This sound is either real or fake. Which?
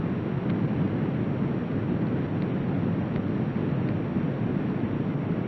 real